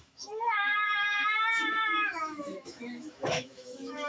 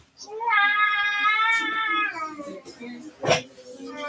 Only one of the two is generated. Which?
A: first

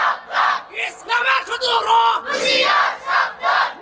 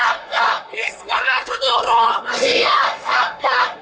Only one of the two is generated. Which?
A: second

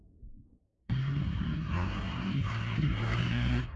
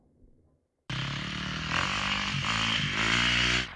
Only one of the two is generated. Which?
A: first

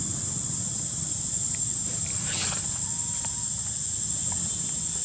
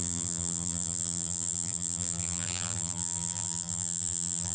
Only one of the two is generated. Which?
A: second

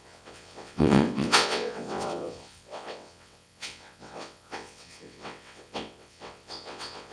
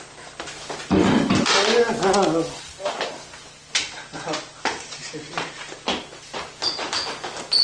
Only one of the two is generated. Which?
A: first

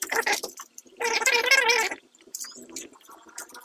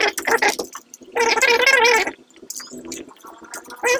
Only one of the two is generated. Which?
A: first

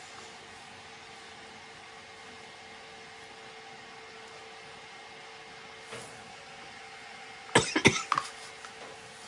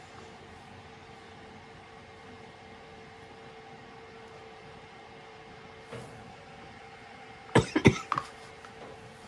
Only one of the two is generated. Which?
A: second